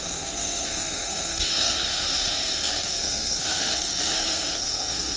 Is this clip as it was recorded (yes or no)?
no